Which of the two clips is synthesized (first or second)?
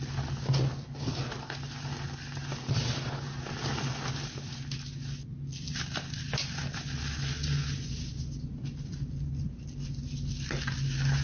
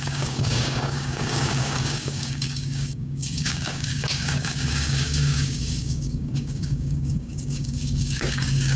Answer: second